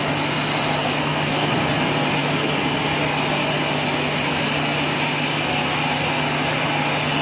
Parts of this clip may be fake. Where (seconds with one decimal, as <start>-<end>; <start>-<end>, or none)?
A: 0.8-1.5